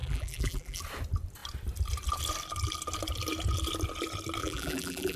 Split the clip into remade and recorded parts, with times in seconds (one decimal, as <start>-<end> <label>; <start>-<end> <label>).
0.0-0.8 remade; 0.8-4.4 recorded; 4.4-5.2 remade